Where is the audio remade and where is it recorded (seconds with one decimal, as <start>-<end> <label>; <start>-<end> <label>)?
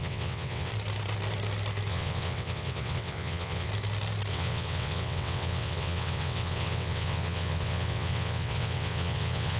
0.0-0.7 remade; 0.7-1.9 recorded; 1.9-3.7 remade; 3.7-4.3 recorded; 4.3-9.6 remade